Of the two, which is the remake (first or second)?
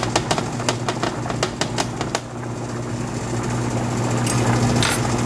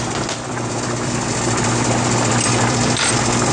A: second